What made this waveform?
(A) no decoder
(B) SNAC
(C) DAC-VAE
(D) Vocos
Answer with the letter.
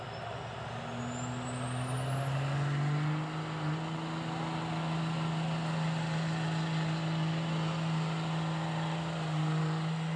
A